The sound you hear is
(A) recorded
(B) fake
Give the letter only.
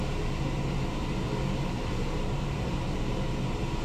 A